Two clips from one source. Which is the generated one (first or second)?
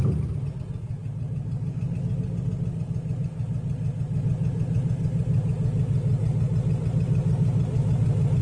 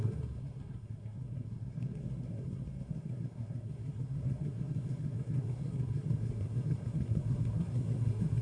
second